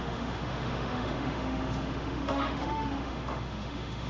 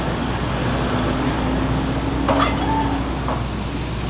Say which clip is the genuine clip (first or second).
second